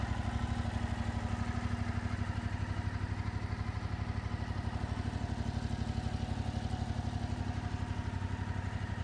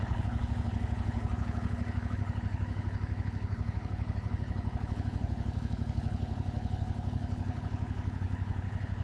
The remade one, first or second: second